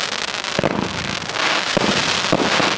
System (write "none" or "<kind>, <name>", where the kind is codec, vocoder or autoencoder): none